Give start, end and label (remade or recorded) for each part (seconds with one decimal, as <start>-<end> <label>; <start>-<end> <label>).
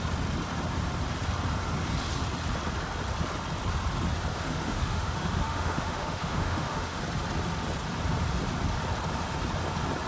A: 0.0-4.3 recorded; 4.3-7.0 remade; 7.0-10.1 recorded